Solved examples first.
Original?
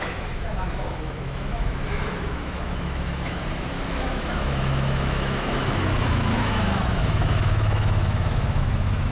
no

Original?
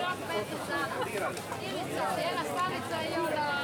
yes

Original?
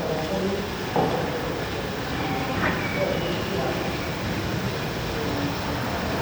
yes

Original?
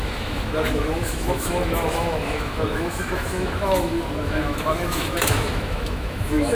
no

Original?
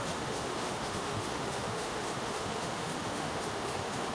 no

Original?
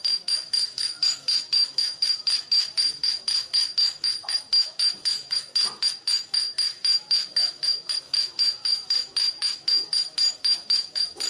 no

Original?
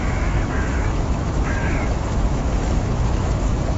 no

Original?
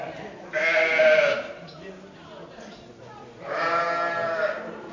yes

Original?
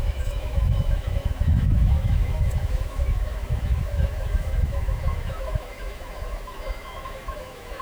no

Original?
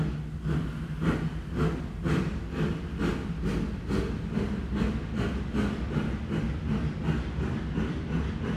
yes